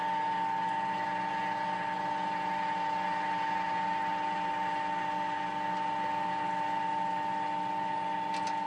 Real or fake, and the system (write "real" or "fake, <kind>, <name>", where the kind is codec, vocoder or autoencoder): real